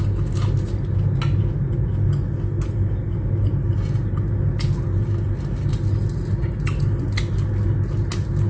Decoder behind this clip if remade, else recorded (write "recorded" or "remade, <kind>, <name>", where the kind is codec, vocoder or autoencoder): recorded